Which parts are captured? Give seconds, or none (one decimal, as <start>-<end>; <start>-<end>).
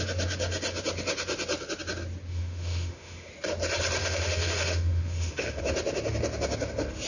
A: 0.0-2.3; 3.3-4.0; 5.6-7.1